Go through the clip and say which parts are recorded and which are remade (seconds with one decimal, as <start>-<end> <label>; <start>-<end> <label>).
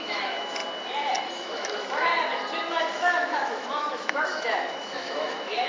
0.0-0.6 remade; 0.6-1.3 recorded; 1.3-2.1 remade; 2.1-2.7 recorded; 2.7-5.7 remade